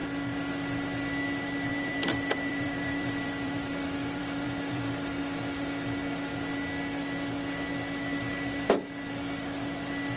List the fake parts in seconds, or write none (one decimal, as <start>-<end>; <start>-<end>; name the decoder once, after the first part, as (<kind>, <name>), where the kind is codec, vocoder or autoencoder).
1.7-4.9 (vocoder, BigVGAN v2)